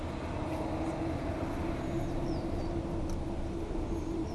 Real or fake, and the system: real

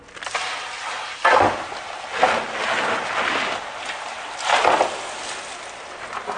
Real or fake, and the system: real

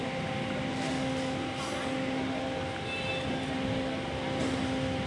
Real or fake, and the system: real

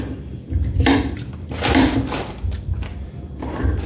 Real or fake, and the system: fake, vocoder, BigVGAN v2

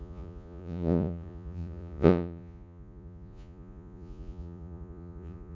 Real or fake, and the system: fake, vocoder, Vocos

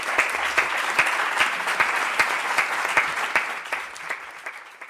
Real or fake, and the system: real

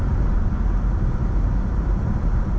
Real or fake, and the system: real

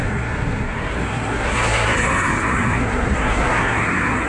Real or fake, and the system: fake, codec, SNAC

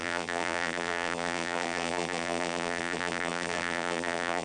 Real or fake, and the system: fake, vocoder, BigVGAN v2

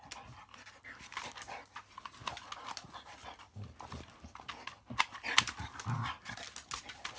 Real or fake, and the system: real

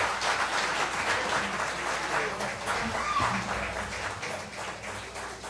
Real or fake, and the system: real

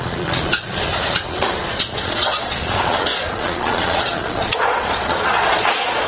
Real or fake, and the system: fake, vocoder, Vocos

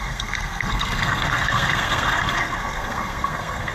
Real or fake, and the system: fake, codec, SNAC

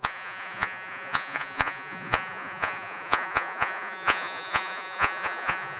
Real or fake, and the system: fake, vocoder, Vocos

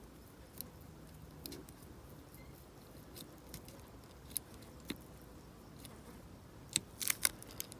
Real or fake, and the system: real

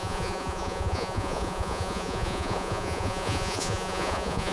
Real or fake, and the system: fake, vocoder, Vocos